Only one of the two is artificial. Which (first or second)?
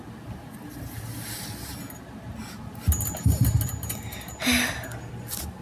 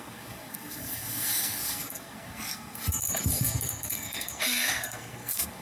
second